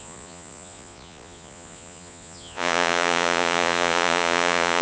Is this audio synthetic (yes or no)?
yes